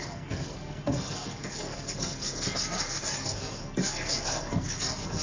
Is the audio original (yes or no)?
no